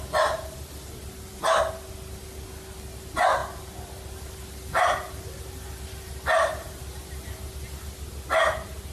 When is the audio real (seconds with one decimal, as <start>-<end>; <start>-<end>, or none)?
0.0-8.9